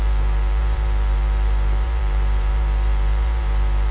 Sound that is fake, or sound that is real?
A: fake